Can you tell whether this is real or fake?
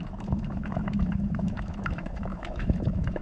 fake